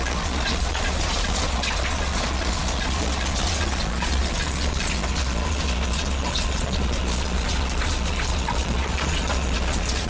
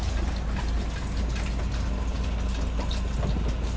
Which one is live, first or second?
second